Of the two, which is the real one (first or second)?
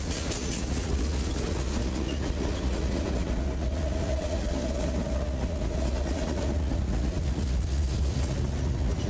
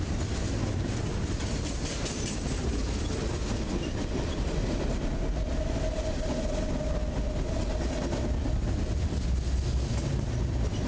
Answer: second